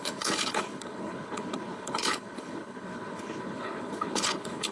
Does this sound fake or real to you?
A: fake